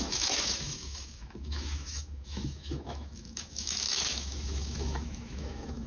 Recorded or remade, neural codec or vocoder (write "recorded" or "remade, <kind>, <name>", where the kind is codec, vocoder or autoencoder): remade, autoencoder, DAC-VAE